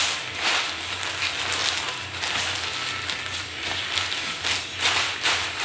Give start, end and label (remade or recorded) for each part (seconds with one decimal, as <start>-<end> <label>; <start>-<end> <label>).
0.0-5.6 recorded